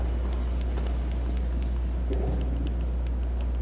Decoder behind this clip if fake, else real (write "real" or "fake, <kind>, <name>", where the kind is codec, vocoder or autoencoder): real